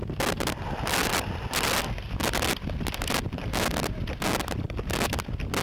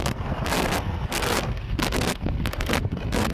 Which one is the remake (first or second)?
second